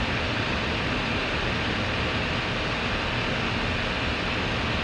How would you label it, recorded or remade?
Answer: recorded